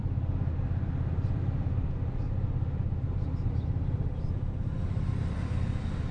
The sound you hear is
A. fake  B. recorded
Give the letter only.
A